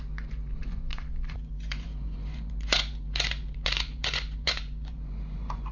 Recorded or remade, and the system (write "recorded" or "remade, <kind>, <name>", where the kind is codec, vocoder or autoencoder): remade, vocoder, Vocos